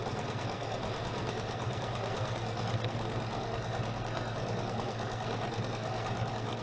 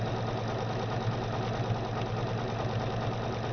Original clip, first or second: second